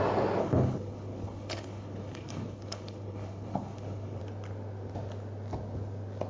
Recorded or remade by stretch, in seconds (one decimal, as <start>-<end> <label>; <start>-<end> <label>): 0.0-0.4 recorded; 0.4-4.2 remade; 4.2-6.3 recorded